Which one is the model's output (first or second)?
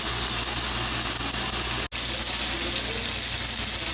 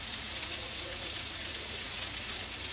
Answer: second